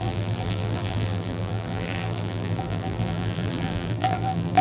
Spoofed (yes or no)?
yes